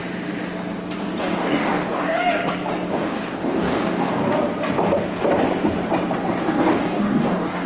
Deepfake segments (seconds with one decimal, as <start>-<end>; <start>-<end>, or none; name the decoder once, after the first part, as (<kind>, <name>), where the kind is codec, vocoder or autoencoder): 1.2-2.4 (codec, DAC); 2.9-4.2; 6.4-7.7